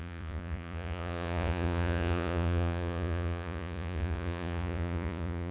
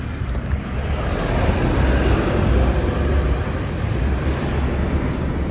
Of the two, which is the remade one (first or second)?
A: first